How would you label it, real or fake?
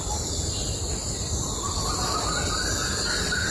real